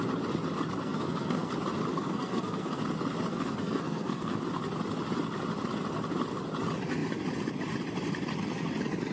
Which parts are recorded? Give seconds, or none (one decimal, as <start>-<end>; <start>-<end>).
0.0-0.8; 1.5-1.9; 2.8-3.3; 4.4-9.1